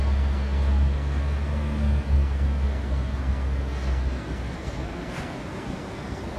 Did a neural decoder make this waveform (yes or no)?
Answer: yes